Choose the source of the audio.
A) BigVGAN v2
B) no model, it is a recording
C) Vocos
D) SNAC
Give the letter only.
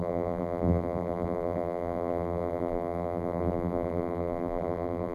A